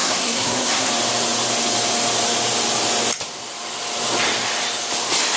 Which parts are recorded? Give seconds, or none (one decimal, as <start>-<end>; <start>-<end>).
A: 0.9-5.4